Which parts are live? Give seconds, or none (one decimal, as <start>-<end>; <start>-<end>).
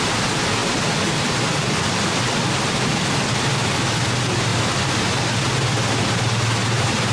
0.0-7.1